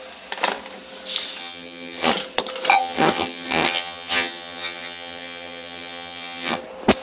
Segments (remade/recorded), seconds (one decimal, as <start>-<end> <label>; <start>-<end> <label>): 0.0-1.4 recorded; 1.4-2.1 remade; 2.1-2.7 recorded; 2.7-6.6 remade; 6.6-7.0 recorded